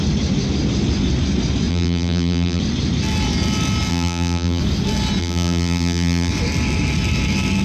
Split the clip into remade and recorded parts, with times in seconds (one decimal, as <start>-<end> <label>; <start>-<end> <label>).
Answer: 0.0-1.7 recorded; 1.7-2.6 remade; 2.6-3.9 recorded; 3.9-4.6 remade; 4.6-5.2 recorded; 5.2-6.3 remade; 6.3-7.6 recorded